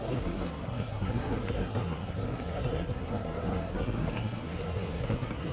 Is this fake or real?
fake